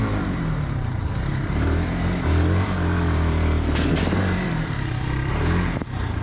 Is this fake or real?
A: fake